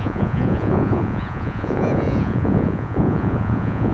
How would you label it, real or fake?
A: fake